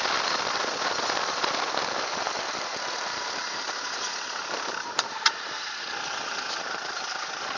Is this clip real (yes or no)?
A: yes